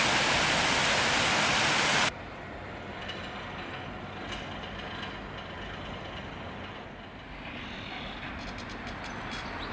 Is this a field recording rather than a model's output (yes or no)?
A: yes